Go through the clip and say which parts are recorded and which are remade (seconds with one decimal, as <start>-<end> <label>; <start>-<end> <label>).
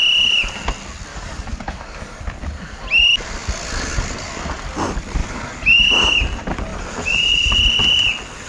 0.0-1.1 recorded; 1.1-2.2 remade; 2.2-5.2 recorded; 5.2-5.8 remade; 5.8-8.5 recorded